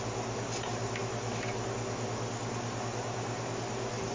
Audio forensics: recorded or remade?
recorded